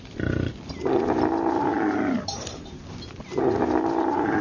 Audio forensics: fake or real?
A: real